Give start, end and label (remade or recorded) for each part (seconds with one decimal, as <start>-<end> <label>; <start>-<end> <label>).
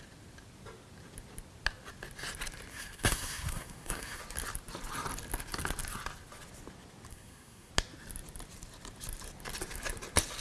0.0-2.7 recorded; 2.7-4.2 remade; 4.2-7.1 recorded; 7.1-7.7 remade; 7.7-10.4 recorded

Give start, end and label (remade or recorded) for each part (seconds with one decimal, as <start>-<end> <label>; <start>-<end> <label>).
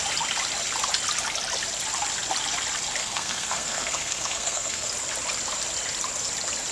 0.0-3.0 recorded; 3.0-4.9 remade; 4.9-6.7 recorded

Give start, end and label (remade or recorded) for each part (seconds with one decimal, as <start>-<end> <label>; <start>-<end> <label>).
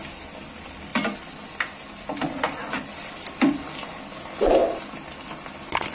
0.0-5.9 recorded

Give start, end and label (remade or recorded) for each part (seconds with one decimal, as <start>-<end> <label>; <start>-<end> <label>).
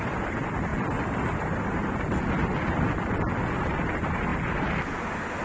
0.0-5.4 recorded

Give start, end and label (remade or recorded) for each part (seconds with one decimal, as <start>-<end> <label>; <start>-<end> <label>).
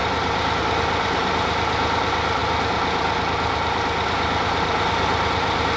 0.0-5.8 recorded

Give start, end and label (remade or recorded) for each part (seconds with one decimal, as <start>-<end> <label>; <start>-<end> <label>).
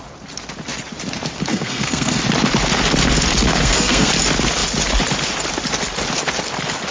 0.0-1.5 recorded; 1.5-2.2 remade; 2.2-3.5 recorded; 3.5-4.1 remade; 4.1-6.9 recorded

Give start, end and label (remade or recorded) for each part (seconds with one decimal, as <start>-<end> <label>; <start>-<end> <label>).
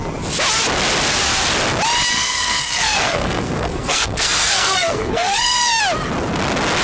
0.0-2.1 recorded; 2.1-5.8 remade; 5.8-6.8 recorded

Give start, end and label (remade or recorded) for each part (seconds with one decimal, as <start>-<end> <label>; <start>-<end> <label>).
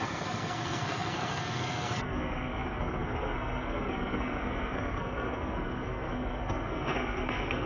0.0-7.7 remade